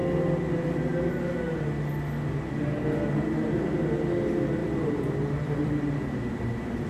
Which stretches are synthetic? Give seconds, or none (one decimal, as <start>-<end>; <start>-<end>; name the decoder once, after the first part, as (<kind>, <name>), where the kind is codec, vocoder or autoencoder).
4.6-6.9 (vocoder, BigVGAN v2)